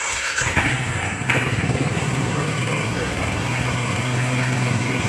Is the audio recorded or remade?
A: remade